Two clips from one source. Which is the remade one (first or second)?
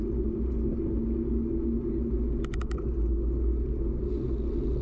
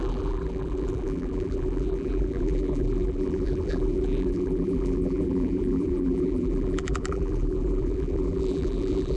second